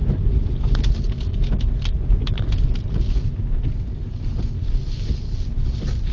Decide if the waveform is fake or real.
real